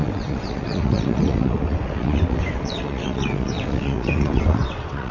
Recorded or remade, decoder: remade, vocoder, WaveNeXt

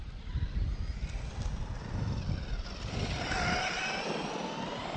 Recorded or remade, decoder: recorded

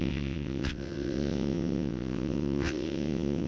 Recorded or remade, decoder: remade, vocoder, WaveNeXt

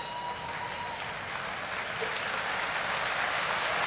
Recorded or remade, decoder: recorded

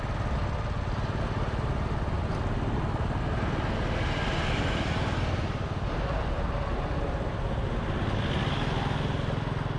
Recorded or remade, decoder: recorded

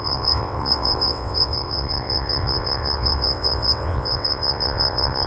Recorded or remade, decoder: remade, vocoder, WaveNeXt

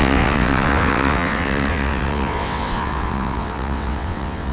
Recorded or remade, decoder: remade, vocoder, WaveNeXt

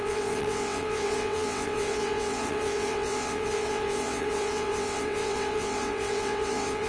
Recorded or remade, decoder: remade, vocoder, WaveNeXt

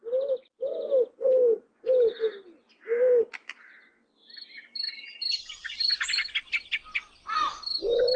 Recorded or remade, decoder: recorded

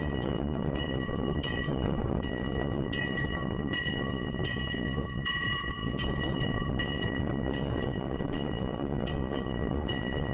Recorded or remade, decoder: remade, vocoder, WaveNeXt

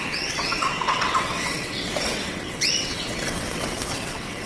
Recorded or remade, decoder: remade, vocoder, WaveNeXt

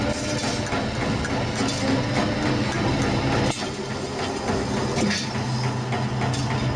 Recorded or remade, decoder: recorded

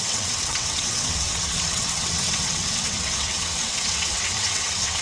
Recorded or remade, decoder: remade, vocoder, WaveNeXt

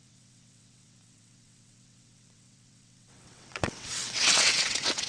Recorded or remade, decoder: remade, vocoder, WaveNeXt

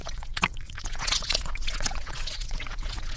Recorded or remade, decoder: remade, vocoder, WaveNeXt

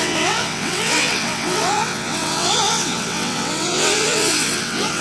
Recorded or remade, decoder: remade, vocoder, WaveNeXt